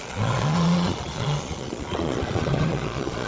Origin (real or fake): fake